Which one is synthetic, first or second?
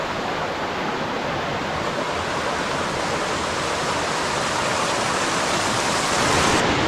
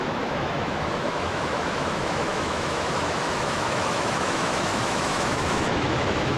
second